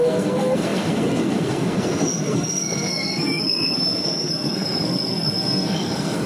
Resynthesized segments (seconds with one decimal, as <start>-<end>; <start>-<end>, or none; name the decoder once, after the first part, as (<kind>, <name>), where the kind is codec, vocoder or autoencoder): 0.0-6.3 (codec, SNAC)

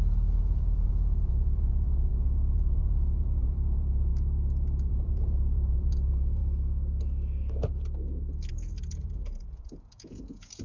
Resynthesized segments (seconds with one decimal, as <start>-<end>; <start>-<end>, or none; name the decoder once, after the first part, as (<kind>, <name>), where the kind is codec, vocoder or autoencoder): 0.0-4.1 (vocoder, Vocos); 4.9-6.4; 8.5-10.6

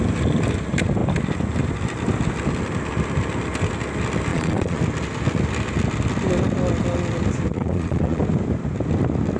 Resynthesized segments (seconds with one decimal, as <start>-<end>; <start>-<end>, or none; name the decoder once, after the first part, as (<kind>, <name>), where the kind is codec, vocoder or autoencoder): 4.3-4.8 (vocoder, Vocos); 7.5-8.2

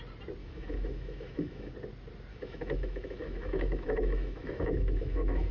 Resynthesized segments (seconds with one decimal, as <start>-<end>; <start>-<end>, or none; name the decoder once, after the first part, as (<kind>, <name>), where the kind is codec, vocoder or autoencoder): 0.4-1.7 (autoencoder, DAC-VAE); 2.3-5.5

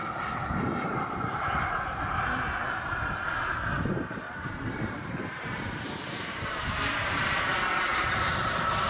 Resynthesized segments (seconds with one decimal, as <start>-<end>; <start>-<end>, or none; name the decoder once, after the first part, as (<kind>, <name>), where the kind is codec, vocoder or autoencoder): 0.0-2.0 (vocoder, BigVGAN v2); 3.7-7.4; 7.9-8.9

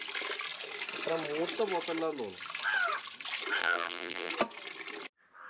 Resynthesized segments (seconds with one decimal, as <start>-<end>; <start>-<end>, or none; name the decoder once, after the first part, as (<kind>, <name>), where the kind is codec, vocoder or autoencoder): 3.6-4.3 (vocoder, BigVGAN v2)

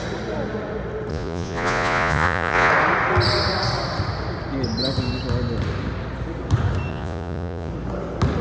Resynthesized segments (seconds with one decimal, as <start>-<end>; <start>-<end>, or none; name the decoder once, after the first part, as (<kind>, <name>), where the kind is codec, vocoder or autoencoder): 1.1-2.7 (vocoder, Vocos); 6.9-7.7